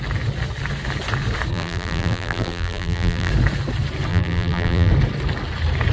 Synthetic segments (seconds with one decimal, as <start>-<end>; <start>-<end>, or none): 1.5-3.3; 4.1-4.9